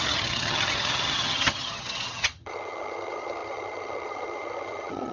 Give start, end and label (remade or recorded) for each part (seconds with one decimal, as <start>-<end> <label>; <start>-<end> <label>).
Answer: 0.0-5.1 remade